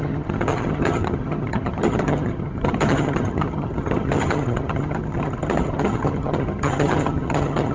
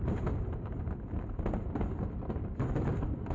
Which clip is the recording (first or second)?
second